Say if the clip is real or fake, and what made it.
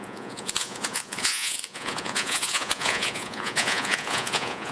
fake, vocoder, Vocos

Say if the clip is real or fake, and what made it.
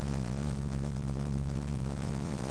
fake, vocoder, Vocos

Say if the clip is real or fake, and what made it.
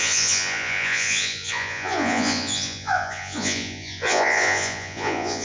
fake, vocoder, Vocos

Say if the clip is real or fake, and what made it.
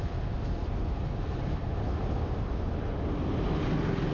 real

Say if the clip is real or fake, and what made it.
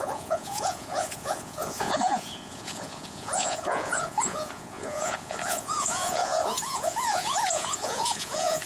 fake, vocoder, Vocos